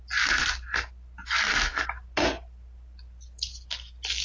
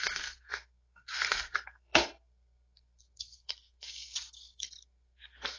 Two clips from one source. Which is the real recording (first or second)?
first